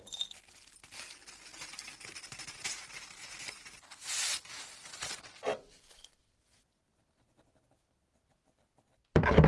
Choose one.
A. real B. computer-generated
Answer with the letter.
A